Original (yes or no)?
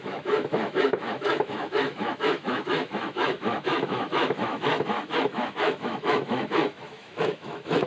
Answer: no